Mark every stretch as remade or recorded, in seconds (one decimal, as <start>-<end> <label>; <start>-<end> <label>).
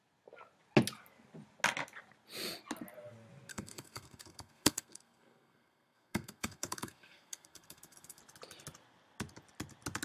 0.0-3.5 recorded; 3.5-8.2 remade; 8.2-10.0 recorded